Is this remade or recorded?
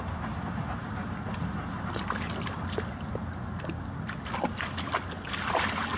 recorded